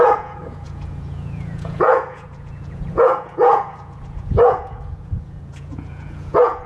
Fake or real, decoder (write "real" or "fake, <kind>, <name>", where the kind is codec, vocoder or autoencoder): fake, vocoder, Vocos